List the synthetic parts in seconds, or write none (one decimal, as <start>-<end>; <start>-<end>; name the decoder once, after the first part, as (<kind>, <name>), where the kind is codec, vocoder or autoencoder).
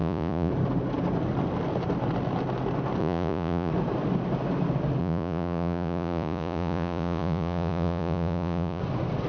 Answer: 0.0-0.5 (vocoder, Vocos); 3.0-3.7; 5.0-8.8